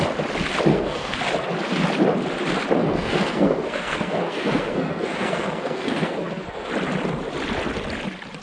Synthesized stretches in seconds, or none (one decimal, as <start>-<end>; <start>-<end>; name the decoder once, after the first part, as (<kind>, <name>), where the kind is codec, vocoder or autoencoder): 0.7-1.2 (codec, SNAC); 2.8-6.7